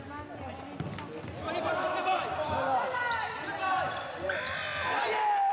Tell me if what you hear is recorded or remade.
recorded